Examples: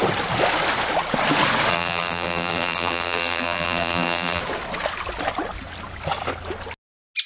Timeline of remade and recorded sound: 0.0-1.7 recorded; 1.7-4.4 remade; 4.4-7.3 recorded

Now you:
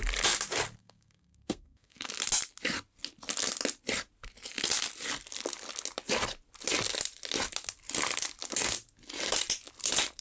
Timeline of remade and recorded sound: 0.0-0.8 recorded; 0.8-2.1 remade; 2.1-10.2 recorded

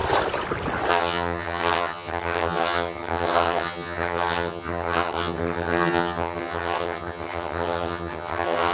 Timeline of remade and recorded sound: 0.0-0.9 recorded; 0.9-8.7 remade

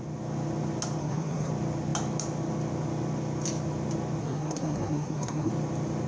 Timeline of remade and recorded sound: 0.0-1.0 recorded; 1.0-1.5 remade; 1.5-4.2 recorded; 4.2-5.5 remade; 5.5-6.1 recorded

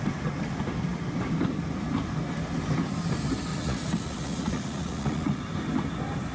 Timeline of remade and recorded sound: 0.0-3.5 recorded; 3.5-5.4 remade; 5.4-6.3 recorded